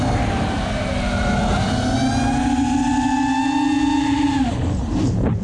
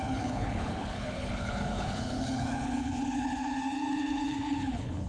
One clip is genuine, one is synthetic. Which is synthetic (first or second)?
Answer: second